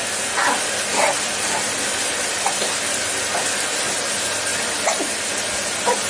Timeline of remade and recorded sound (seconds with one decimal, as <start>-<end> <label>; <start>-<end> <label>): 0.0-0.4 recorded; 0.4-4.1 remade; 4.1-4.5 recorded; 4.5-5.1 remade; 5.1-6.1 recorded